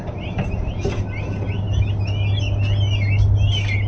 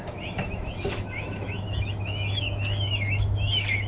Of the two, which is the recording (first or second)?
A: first